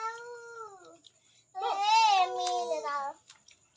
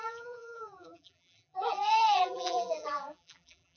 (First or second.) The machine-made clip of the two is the second